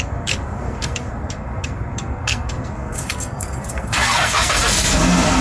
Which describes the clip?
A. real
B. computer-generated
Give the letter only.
B